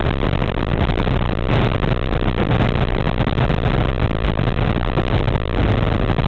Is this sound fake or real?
real